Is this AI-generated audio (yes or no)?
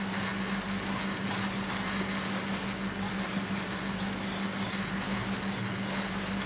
no